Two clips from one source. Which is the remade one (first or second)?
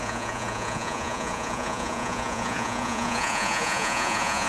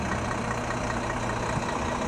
first